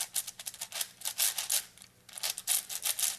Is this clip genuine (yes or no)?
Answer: yes